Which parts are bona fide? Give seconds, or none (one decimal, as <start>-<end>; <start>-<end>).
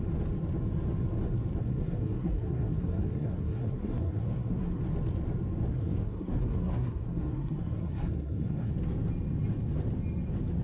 0.0-1.6; 4.8-5.7; 8.7-10.6